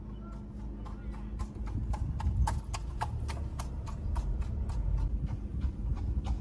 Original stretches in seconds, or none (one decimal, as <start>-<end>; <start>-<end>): 0.0-3.5; 4.4-5.5; 6.0-6.4